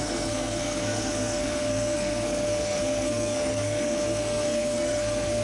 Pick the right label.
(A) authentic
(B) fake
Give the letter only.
B